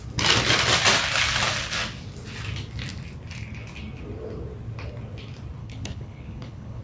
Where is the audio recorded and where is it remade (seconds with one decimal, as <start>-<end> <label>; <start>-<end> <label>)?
0.0-5.6 recorded; 5.6-6.8 remade